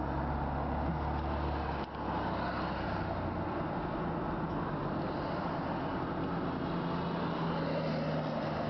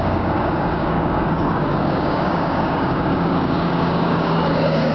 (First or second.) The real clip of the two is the first